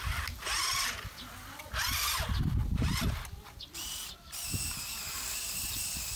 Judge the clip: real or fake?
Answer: real